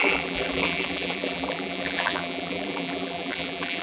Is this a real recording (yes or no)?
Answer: no